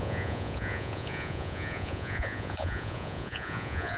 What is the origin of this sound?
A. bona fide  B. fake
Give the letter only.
B